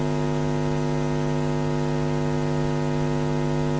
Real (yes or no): yes